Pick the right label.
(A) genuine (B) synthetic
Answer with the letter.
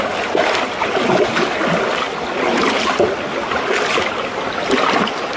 A